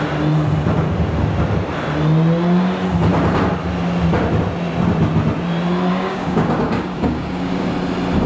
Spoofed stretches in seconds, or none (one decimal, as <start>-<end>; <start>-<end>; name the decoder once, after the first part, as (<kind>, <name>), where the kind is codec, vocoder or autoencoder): 5.9-7.7 (codec, DAC)